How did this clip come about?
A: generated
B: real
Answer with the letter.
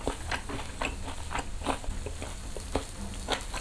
B